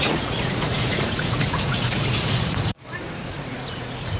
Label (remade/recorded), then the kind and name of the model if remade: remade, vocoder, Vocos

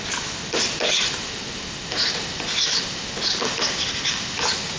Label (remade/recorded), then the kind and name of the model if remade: recorded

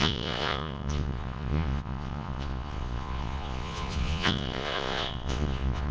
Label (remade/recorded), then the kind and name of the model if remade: remade, vocoder, Vocos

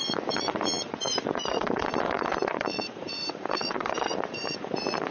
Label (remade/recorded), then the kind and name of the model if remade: remade, vocoder, Vocos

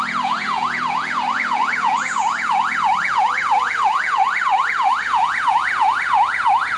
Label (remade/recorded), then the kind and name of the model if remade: remade, vocoder, Vocos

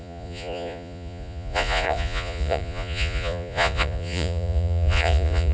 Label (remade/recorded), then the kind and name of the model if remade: remade, vocoder, Vocos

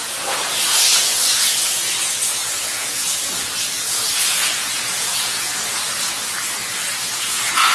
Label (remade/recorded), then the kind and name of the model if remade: remade, vocoder, Vocos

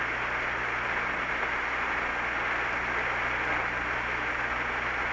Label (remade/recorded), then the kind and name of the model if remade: recorded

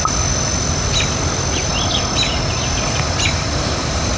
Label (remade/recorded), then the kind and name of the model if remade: recorded